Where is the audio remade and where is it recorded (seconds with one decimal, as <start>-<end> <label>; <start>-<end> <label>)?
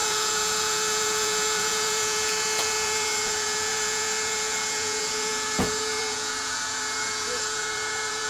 0.0-8.3 remade